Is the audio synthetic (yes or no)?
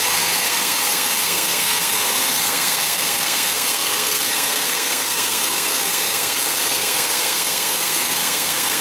yes